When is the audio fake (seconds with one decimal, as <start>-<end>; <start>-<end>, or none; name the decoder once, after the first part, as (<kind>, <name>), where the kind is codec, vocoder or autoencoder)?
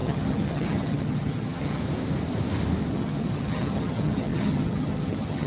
0.0-1.8 (vocoder, HiFi-GAN); 2.9-5.5